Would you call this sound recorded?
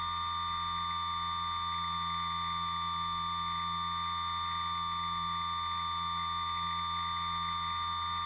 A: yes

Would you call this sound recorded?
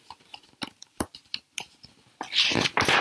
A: yes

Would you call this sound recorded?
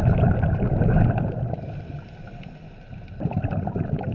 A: yes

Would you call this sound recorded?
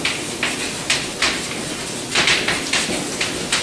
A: yes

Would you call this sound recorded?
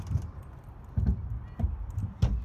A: yes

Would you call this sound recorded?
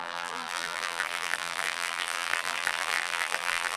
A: no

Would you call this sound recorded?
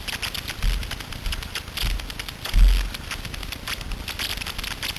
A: yes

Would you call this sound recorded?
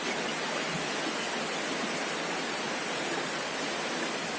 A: yes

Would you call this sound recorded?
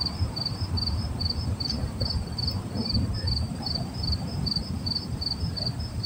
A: no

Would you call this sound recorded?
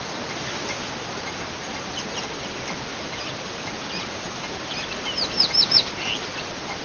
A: yes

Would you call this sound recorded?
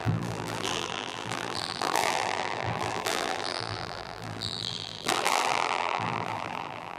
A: no